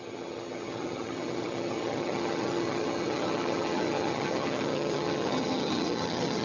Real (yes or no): no